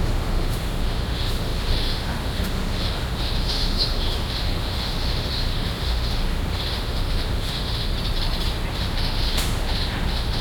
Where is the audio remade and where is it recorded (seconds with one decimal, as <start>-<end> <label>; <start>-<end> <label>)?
0.0-7.9 remade; 7.9-8.7 recorded; 8.7-10.4 remade